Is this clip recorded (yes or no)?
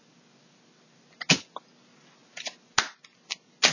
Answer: yes